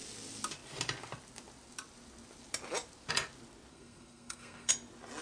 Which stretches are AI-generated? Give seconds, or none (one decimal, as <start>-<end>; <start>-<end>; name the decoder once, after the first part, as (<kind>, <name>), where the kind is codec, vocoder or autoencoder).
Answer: 3.7-4.7 (codec, SNAC)